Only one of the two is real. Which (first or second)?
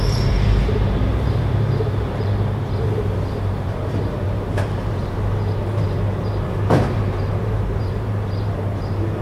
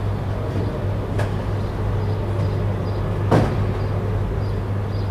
second